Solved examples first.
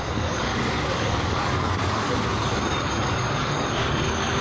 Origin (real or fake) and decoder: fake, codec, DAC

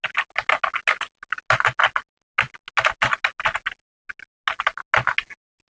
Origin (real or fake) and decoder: real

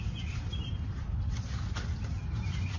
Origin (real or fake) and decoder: real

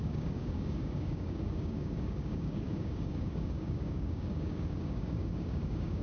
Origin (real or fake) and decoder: fake, codec, DAC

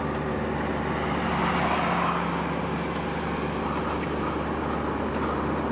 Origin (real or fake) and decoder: real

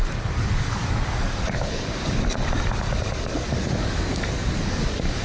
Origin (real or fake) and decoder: fake, codec, DAC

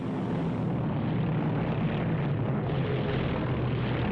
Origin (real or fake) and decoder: real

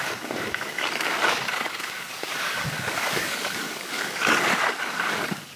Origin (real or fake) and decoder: fake, codec, DAC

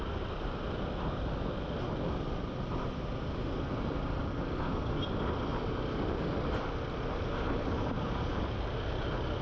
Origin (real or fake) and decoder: real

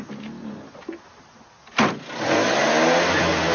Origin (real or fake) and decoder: real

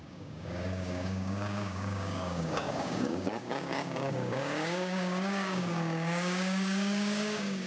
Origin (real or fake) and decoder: fake, codec, DAC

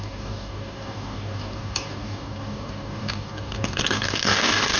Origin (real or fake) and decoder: fake, codec, DAC